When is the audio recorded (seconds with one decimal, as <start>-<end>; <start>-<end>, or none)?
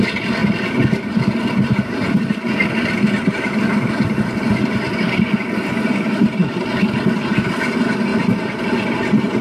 0.4-1.5